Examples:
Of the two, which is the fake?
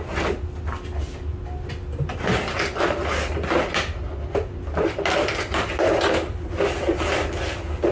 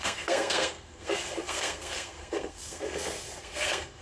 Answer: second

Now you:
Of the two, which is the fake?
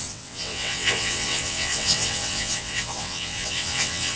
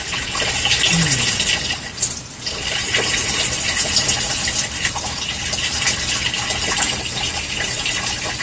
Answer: first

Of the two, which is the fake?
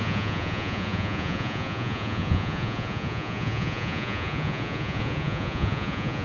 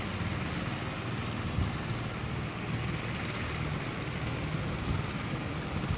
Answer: first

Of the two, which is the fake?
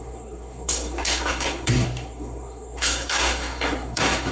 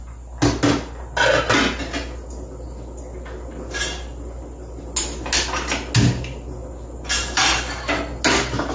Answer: first